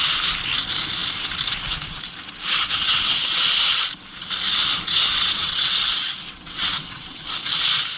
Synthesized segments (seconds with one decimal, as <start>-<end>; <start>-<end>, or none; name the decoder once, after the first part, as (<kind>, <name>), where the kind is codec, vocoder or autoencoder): 2.6-3.4 (vocoder, WaveNeXt); 5.2-7.2